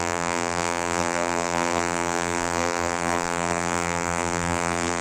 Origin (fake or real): fake